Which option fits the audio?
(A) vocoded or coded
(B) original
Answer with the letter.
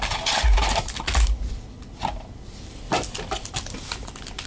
B